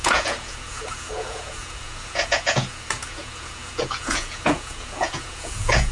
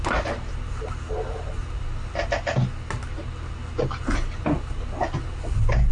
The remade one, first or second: first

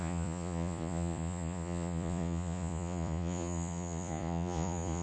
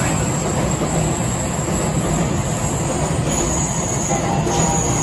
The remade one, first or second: first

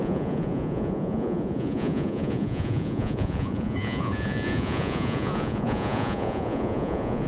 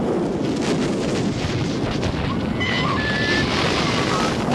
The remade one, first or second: first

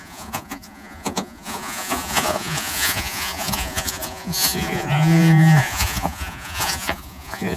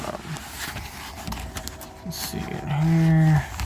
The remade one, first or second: first